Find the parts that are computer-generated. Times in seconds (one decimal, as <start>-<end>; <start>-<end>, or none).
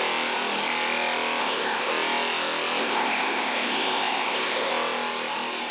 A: 1.4-1.9; 2.8-4.7